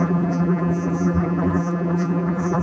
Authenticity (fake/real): fake